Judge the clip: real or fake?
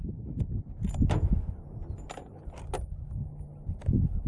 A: real